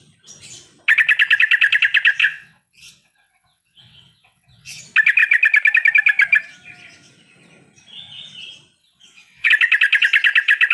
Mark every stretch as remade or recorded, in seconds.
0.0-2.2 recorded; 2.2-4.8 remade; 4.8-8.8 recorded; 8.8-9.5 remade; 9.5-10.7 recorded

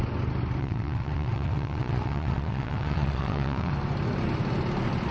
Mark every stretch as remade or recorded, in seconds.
0.0-0.6 recorded; 0.6-3.7 remade; 3.7-5.1 recorded

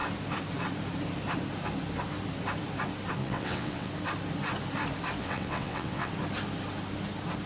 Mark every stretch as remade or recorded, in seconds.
0.0-3.2 recorded; 3.2-3.9 remade; 3.9-5.2 recorded; 5.2-6.1 remade; 6.1-7.5 recorded

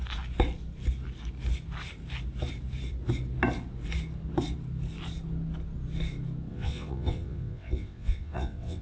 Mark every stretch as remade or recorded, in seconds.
0.0-6.5 recorded; 6.5-8.8 remade

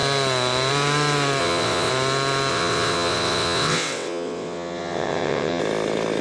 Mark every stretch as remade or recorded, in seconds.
0.0-1.4 recorded; 1.4-1.9 remade; 1.9-2.5 recorded; 2.5-5.6 remade; 5.6-6.2 recorded